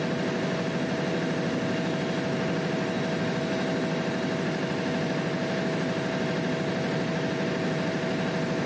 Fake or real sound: real